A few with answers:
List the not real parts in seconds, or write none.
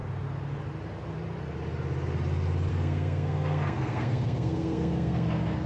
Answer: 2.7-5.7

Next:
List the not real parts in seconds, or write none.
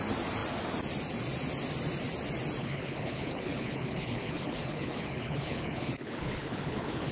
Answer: 2.6-7.1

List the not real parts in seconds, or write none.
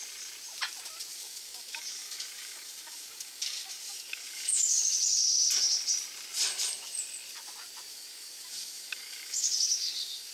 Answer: 1.1-4.8; 7.9-10.3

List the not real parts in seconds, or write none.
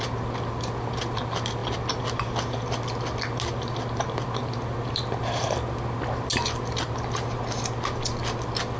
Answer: none